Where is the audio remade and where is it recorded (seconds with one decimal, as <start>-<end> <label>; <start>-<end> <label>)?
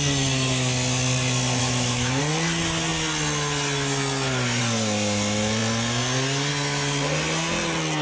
0.0-1.6 recorded; 1.6-2.2 remade; 2.2-8.0 recorded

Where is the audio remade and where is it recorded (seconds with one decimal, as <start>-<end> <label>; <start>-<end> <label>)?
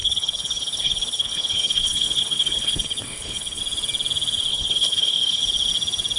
0.0-3.6 remade; 3.6-4.5 recorded; 4.5-5.4 remade; 5.4-6.2 recorded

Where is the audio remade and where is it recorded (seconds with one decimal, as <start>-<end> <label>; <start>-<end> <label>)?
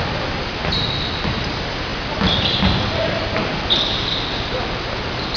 0.0-5.4 recorded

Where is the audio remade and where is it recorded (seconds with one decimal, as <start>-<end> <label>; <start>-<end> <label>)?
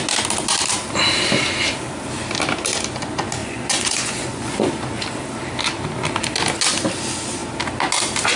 0.0-3.4 recorded; 3.4-4.7 remade; 4.7-8.4 recorded